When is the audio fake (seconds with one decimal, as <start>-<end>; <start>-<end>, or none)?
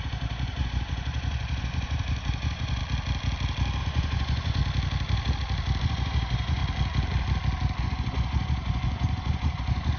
0.0-2.8; 3.8-4.6; 5.8-6.6; 7.8-10.0